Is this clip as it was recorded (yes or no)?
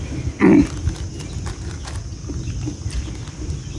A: yes